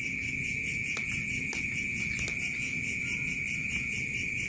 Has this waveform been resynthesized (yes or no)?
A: no